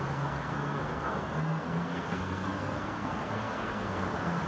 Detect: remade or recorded remade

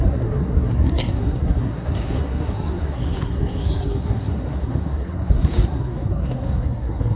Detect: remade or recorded remade